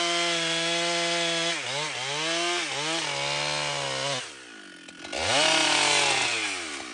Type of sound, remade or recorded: recorded